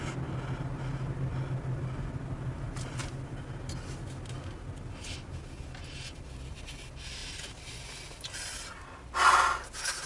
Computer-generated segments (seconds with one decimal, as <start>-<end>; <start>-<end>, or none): none